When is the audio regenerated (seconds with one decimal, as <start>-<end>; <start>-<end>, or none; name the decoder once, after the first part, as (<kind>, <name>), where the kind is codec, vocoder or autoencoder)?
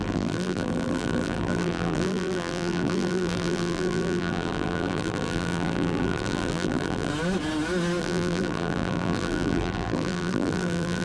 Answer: 0.0-7.1 (vocoder, BigVGAN v2); 8.0-11.0